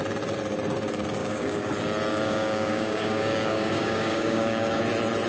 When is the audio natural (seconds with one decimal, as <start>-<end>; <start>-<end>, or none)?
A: 0.0-1.2; 1.7-2.1; 4.8-5.3